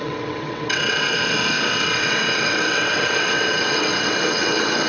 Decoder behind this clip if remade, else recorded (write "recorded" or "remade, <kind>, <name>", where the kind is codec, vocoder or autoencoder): remade, vocoder, WaveNeXt